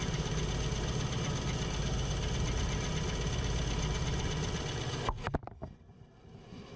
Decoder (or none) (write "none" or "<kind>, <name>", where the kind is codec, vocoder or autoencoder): none